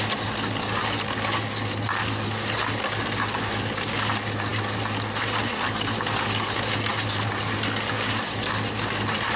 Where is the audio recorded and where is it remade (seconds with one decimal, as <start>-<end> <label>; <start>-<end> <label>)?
0.0-9.4 recorded